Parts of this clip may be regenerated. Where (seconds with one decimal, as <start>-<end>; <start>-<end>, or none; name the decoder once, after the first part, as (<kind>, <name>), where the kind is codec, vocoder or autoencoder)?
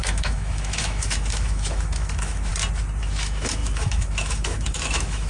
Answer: 0.0-2.5 (autoencoder, DAC-VAE); 3.0-5.3